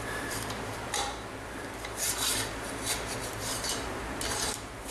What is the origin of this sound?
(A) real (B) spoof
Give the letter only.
B